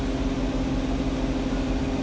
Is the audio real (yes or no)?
yes